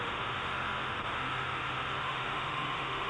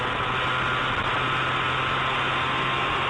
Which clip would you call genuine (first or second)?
second